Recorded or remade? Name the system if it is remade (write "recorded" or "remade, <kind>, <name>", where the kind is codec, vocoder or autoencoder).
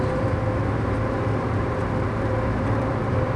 recorded